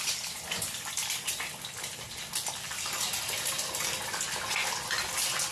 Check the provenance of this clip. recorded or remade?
recorded